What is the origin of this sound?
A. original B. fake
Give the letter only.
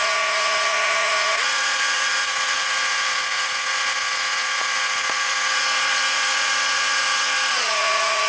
B